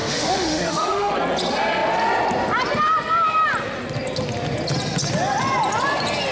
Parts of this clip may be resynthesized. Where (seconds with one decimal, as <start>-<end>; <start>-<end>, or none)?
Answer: 0.0-1.1